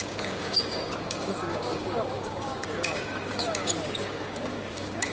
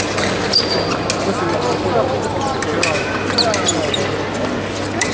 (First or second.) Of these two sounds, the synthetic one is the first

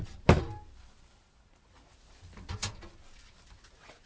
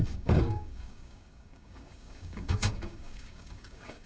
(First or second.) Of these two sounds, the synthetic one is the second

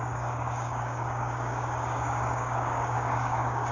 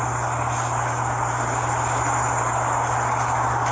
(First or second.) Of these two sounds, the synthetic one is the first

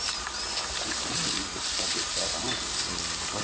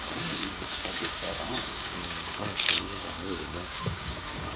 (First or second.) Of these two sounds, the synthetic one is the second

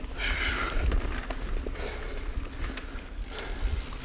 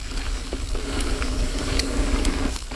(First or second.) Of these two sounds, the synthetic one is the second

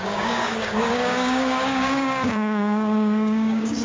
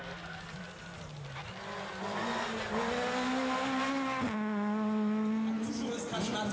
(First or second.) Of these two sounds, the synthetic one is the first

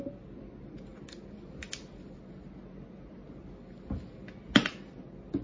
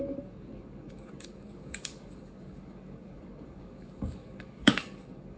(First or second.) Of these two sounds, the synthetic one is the second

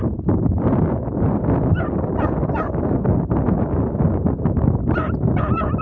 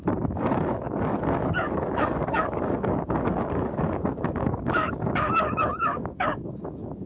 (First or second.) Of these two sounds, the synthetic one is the second